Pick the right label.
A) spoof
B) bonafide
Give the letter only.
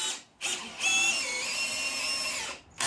B